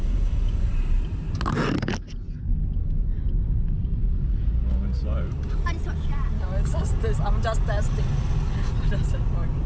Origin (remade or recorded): recorded